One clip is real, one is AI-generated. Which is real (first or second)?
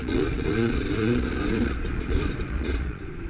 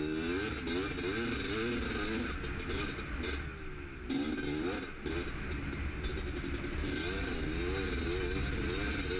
second